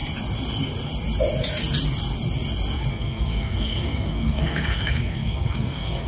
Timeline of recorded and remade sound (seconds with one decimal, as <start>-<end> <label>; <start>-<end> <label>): 0.0-2.9 recorded; 2.9-6.1 remade